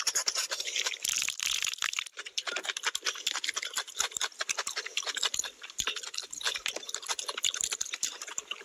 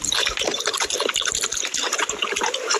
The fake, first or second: first